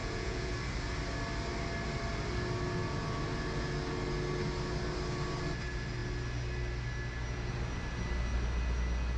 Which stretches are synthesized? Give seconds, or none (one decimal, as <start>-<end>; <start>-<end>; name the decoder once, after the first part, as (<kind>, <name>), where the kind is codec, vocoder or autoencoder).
0.0-0.5 (vocoder, Vocos)